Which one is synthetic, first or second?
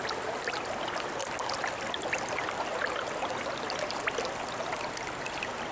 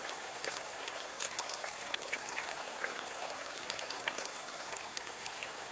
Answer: second